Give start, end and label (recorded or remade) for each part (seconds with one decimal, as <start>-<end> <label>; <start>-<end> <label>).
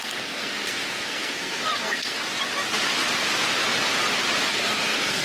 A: 0.0-2.2 remade; 2.2-4.5 recorded; 4.5-5.2 remade